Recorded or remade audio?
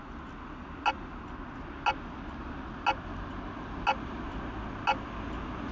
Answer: recorded